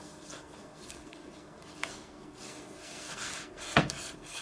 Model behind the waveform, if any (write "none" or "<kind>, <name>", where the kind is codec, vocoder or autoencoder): codec, SNAC